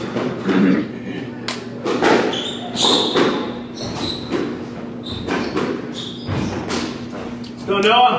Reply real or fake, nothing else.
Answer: real